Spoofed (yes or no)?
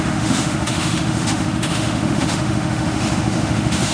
yes